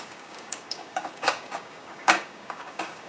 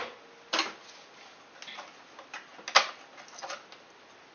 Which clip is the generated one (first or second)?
first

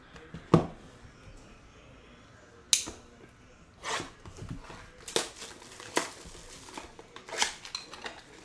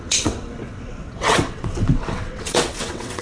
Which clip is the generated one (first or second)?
second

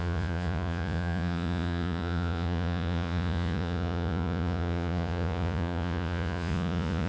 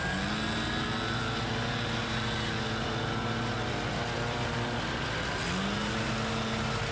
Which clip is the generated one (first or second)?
first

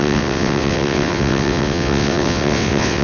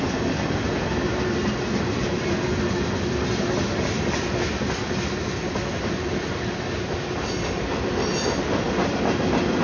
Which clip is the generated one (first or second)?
first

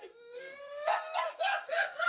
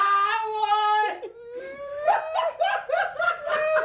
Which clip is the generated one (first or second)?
first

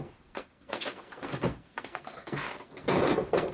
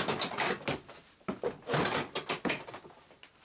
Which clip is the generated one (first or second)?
first